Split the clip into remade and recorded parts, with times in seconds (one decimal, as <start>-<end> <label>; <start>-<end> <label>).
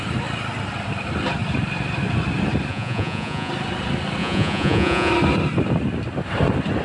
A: 0.0-2.7 recorded; 2.7-3.5 remade; 3.5-4.2 recorded; 4.2-5.1 remade; 5.1-6.8 recorded